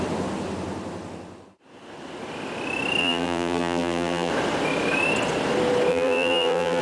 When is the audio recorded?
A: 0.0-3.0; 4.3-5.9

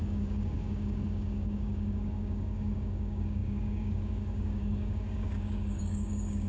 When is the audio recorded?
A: none

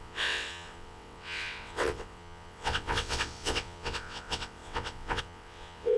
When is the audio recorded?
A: none